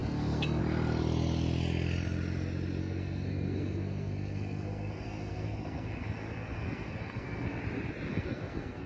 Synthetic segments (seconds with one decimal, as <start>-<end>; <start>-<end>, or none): 0.0-0.6; 2.8-7.6; 8.1-8.9